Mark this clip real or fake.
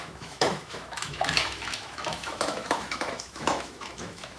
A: fake